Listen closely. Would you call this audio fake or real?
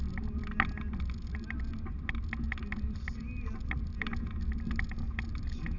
real